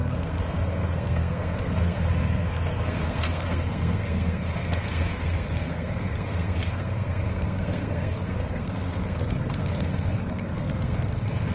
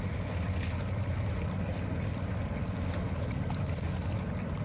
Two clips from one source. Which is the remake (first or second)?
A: first